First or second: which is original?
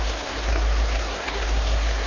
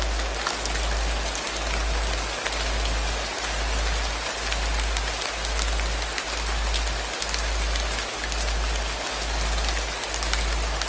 second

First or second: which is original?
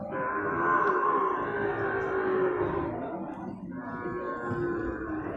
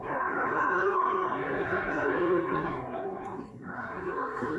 first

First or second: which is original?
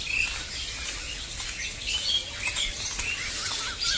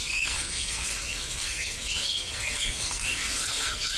first